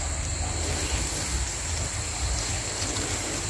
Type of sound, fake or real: real